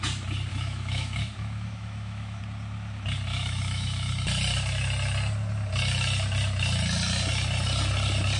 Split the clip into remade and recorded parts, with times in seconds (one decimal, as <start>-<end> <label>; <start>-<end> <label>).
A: 0.0-0.5 recorded; 0.5-2.4 remade; 2.4-3.3 recorded; 3.3-4.1 remade; 4.1-8.4 recorded